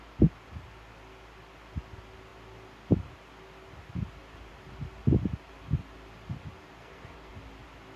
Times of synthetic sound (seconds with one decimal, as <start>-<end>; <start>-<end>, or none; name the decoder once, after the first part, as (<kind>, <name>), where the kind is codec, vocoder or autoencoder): 6.8-7.3 (codec, SNAC)